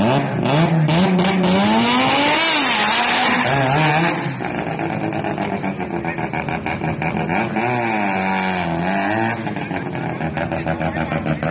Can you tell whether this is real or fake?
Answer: real